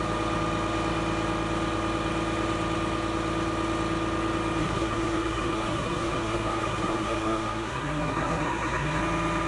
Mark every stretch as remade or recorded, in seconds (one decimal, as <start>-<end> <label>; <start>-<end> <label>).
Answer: 0.0-4.6 recorded; 4.6-9.0 remade; 9.0-9.5 recorded